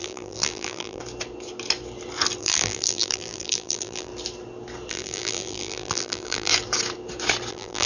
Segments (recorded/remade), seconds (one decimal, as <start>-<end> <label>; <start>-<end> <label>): 0.0-1.0 remade; 1.0-2.4 recorded; 2.4-4.1 remade; 4.1-4.9 recorded; 4.9-6.5 remade; 6.5-7.5 recorded; 7.5-7.9 remade